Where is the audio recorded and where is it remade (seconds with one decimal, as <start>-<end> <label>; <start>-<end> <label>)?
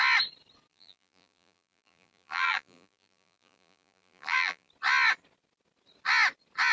0.0-0.7 recorded; 0.7-4.7 remade; 4.7-6.7 recorded